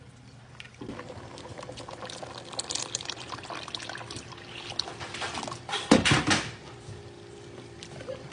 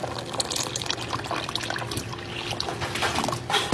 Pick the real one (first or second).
second